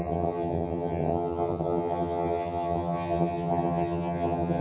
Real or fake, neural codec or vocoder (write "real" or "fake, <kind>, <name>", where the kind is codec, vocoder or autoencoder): fake, vocoder, HiFi-GAN